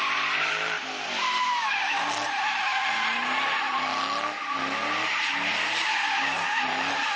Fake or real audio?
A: real